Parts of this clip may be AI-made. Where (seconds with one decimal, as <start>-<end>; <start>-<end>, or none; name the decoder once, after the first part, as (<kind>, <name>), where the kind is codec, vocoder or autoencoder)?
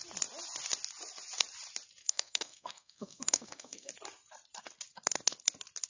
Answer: 2.0-3.9 (codec, SNAC)